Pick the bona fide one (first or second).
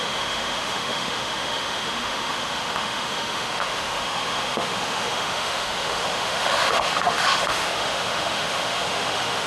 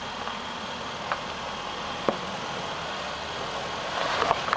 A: second